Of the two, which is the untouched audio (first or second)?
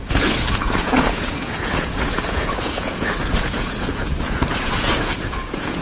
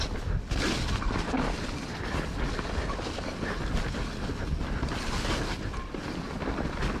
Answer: second